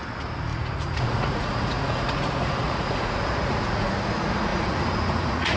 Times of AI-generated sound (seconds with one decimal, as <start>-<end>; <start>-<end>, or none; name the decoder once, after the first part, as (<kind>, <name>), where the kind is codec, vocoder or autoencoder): 0.5-3.9 (vocoder, Vocos); 4.5-5.6